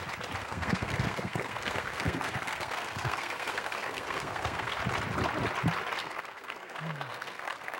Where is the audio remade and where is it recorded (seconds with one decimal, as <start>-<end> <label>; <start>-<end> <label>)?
0.0-0.4 recorded; 0.4-4.8 remade; 4.8-6.0 recorded; 6.0-7.8 remade